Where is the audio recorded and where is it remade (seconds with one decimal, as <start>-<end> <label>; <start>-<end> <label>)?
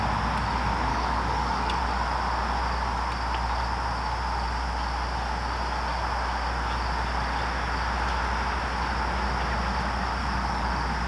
0.0-0.9 recorded; 0.9-1.8 remade; 1.8-10.2 recorded; 10.2-10.7 remade; 10.7-11.1 recorded